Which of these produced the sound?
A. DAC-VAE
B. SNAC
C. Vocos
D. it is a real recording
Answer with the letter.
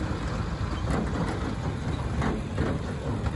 D